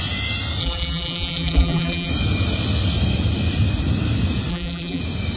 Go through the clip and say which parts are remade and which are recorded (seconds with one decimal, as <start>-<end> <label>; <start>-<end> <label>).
0.0-0.6 recorded; 0.6-2.1 remade; 2.1-4.5 recorded; 4.5-5.0 remade; 5.0-5.4 recorded